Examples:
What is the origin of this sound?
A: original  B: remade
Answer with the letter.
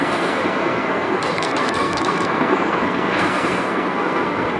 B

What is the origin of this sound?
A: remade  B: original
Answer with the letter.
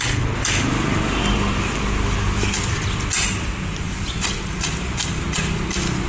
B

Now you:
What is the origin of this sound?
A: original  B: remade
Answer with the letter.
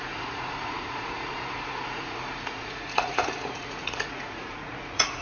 B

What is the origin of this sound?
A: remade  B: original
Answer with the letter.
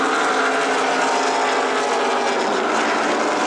B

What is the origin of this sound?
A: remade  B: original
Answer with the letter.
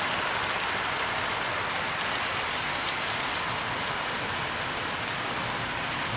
B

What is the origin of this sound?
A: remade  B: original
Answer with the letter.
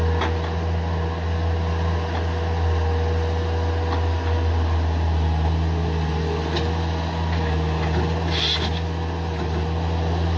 B